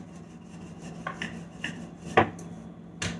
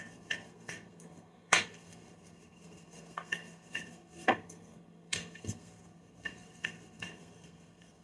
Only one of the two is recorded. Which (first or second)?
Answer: first